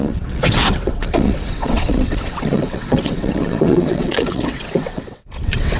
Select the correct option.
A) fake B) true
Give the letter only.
A